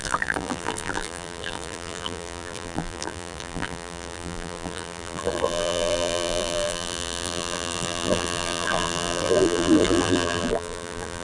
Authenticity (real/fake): fake